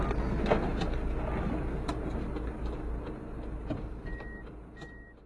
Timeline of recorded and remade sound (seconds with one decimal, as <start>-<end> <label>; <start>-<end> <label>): 0.0-5.3 recorded